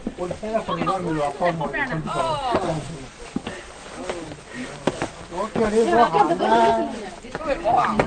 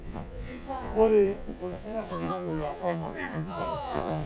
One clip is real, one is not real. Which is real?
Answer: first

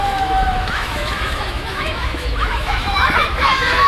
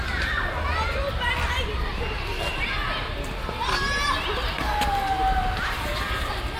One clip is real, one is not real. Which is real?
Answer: second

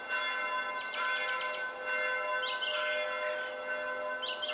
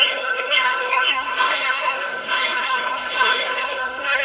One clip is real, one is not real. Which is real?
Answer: first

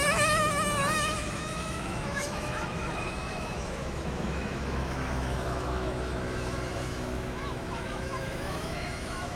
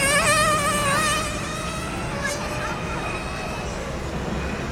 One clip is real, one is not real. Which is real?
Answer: second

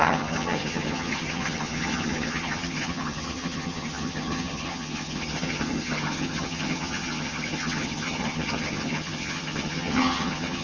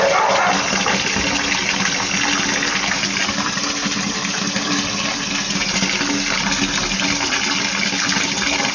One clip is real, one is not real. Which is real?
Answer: second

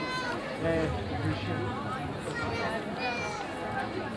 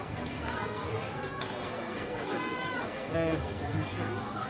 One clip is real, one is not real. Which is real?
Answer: first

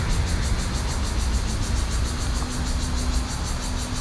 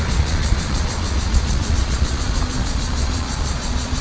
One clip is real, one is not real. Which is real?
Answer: first